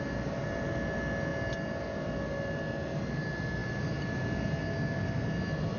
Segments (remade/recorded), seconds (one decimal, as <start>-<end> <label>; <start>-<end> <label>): 0.0-5.8 recorded